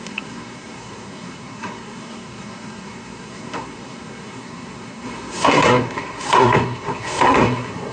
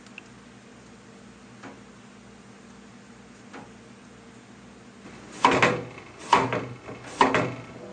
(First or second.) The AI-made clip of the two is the first